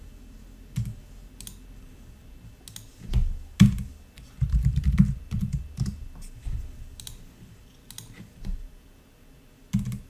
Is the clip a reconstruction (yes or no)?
no